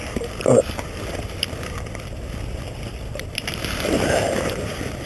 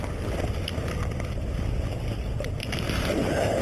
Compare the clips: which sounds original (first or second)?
second